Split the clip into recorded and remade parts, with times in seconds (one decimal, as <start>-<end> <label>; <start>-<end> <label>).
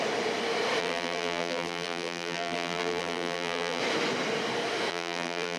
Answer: 0.0-0.8 recorded; 0.8-3.8 remade; 3.8-4.9 recorded; 4.9-5.6 remade